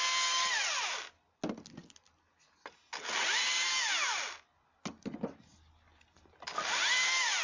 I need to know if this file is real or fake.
real